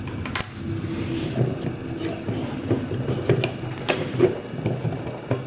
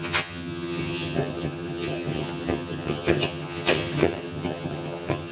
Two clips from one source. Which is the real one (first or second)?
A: first